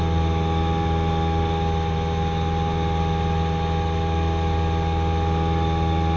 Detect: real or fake real